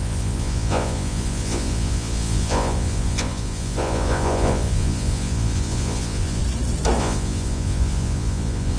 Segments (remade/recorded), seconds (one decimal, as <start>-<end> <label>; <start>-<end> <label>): 0.0-6.4 remade; 6.4-7.0 recorded; 7.0-8.8 remade